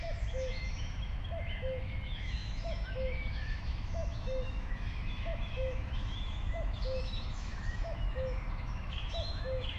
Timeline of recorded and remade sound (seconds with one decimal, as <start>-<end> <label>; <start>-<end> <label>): 0.0-9.8 remade